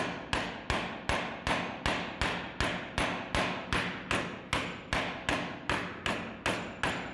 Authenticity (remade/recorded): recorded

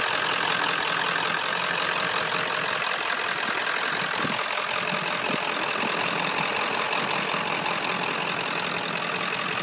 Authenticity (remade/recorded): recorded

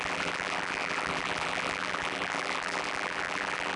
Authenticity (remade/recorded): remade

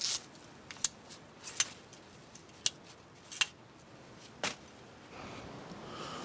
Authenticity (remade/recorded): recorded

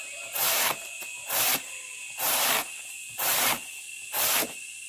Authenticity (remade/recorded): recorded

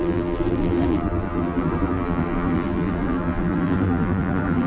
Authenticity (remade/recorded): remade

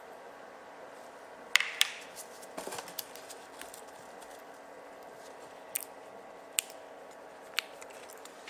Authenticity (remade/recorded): remade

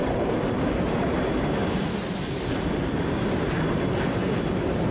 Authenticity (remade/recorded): remade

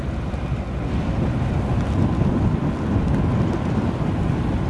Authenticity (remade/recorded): recorded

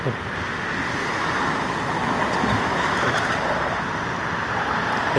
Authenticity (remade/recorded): recorded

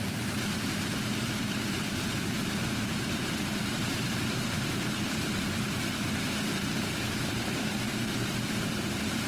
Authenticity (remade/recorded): remade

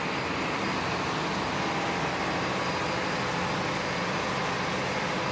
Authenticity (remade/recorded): recorded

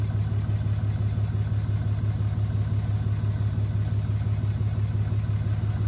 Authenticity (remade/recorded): recorded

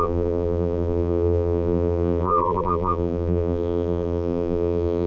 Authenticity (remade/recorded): remade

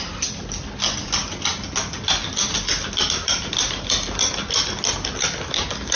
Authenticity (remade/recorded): recorded